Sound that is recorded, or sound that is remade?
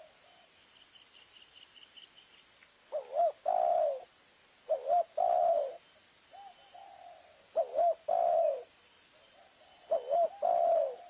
recorded